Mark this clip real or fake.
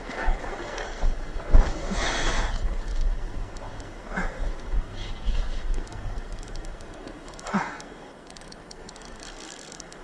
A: fake